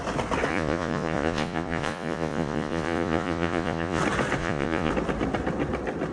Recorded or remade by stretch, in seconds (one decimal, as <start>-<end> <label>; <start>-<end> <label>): 0.0-0.5 recorded; 0.5-4.0 remade; 4.0-4.4 recorded; 4.4-4.9 remade; 4.9-6.1 recorded